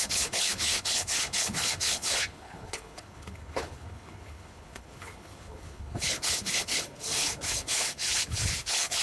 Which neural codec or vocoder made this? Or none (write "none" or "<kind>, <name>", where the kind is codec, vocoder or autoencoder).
codec, HILCodec